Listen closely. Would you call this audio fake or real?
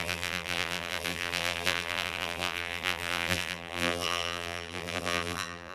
fake